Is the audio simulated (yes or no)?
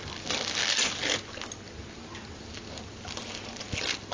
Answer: no